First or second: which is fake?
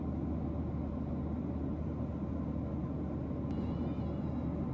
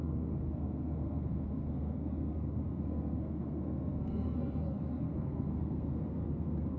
second